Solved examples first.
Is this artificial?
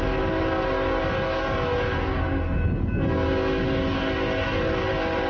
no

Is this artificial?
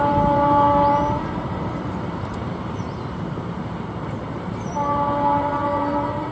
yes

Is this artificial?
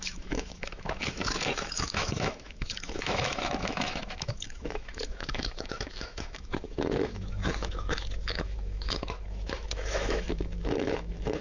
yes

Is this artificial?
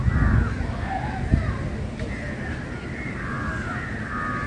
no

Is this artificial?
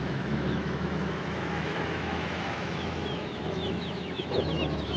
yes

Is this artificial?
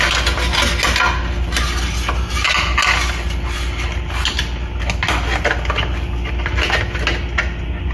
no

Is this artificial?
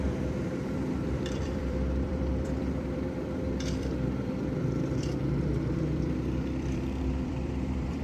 yes